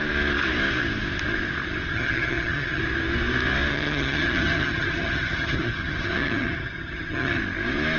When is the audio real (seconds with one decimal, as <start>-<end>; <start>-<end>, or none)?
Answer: 0.0-1.9; 2.8-3.7; 7.4-8.0